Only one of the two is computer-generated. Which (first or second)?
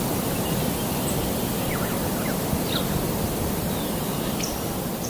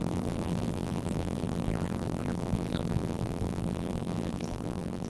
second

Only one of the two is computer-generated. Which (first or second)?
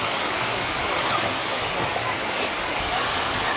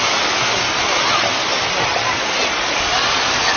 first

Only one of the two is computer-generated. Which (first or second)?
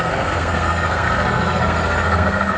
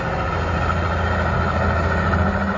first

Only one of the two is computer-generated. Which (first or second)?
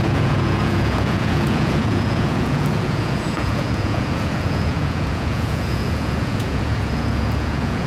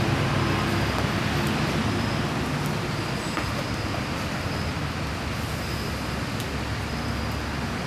first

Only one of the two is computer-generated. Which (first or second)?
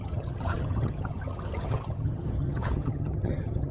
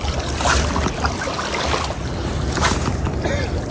first